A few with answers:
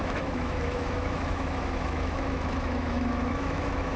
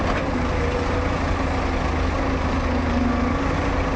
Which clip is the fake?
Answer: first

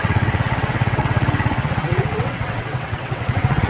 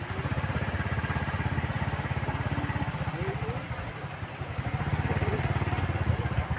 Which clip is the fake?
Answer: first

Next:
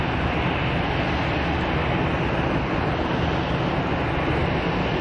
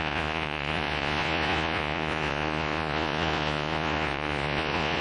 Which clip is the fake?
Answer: second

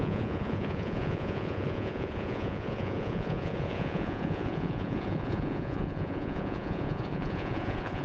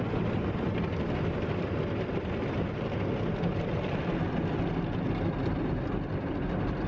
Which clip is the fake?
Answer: first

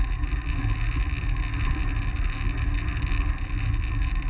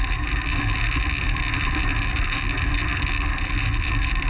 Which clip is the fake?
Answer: second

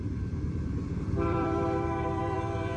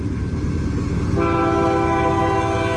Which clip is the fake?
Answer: first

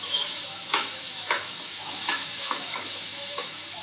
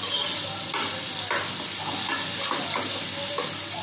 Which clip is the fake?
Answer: first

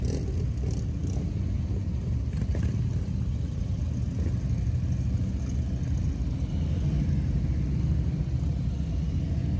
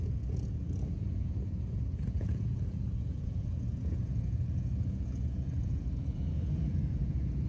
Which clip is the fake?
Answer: second